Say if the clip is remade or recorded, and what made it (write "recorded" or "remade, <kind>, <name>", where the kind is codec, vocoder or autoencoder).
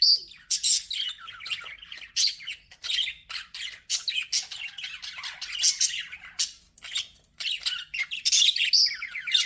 recorded